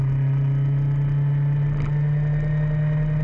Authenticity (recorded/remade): recorded